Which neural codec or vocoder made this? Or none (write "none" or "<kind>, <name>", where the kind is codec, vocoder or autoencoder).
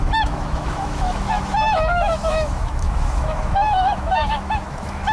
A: autoencoder, DAC-VAE